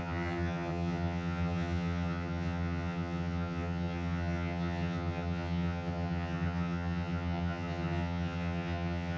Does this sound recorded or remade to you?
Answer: remade